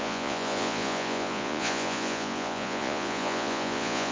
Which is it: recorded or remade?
remade